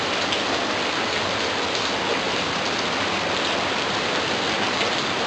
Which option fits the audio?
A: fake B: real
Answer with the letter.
B